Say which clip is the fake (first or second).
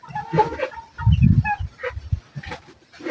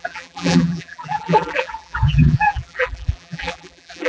second